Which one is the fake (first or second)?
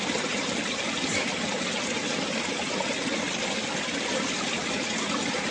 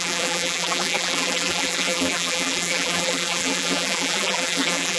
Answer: second